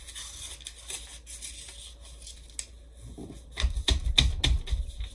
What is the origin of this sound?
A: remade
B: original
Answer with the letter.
B